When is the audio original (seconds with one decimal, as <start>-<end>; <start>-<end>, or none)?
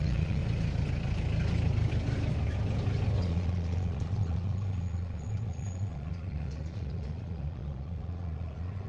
0.4-3.2